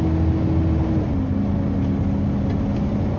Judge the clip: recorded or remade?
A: recorded